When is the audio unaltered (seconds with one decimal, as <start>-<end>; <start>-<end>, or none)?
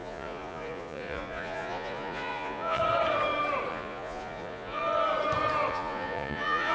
2.8-3.7; 4.8-5.7